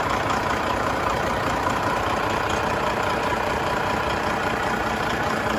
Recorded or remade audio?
remade